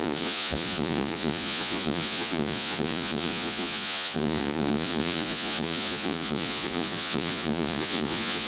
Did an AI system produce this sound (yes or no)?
yes